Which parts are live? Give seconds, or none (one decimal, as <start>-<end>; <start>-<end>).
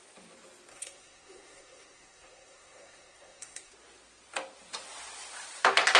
0.0-0.7; 3.7-6.0